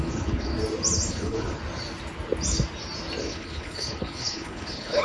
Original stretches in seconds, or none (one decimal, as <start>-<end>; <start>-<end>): 0.5-1.1; 1.6-3.2